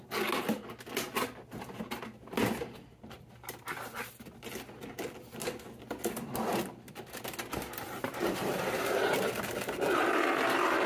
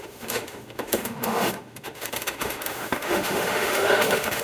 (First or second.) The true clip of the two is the first